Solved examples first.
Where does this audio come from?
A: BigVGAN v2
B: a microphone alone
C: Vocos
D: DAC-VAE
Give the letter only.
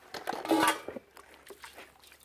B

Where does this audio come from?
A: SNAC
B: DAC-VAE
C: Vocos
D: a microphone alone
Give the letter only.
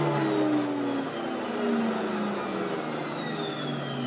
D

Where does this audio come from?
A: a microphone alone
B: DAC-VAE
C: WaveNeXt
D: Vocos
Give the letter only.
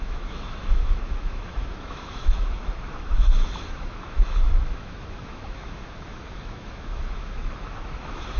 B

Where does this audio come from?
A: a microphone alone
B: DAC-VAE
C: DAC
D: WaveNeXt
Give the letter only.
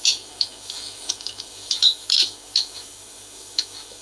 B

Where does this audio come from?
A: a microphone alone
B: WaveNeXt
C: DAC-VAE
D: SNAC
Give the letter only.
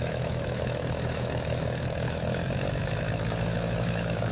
C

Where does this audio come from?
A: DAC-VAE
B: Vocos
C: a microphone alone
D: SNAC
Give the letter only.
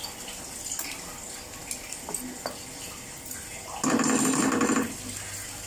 C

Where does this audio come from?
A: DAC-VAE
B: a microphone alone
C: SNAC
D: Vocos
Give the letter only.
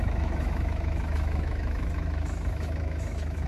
A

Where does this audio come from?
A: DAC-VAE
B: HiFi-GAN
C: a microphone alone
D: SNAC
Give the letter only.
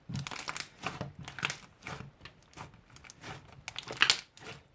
C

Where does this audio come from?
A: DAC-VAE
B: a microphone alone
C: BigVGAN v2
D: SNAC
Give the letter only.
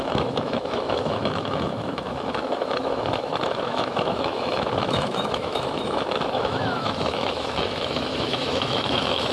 A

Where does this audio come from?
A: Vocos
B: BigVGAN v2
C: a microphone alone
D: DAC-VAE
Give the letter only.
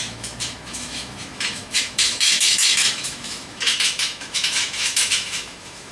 D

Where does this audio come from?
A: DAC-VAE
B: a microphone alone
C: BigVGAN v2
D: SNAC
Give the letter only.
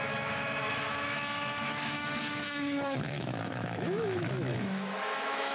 A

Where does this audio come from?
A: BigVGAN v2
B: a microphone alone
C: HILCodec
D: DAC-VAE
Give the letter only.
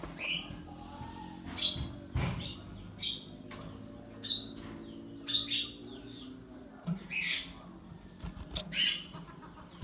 B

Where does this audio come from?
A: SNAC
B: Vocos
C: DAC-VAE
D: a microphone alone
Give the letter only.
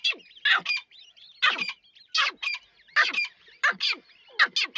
D